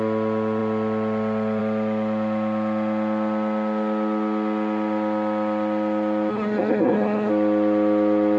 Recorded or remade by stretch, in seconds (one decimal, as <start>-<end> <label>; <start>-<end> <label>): 0.0-6.3 recorded; 6.3-7.3 remade; 7.3-8.4 recorded